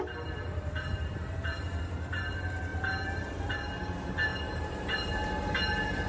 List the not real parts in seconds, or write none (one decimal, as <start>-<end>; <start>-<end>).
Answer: 0.0-6.1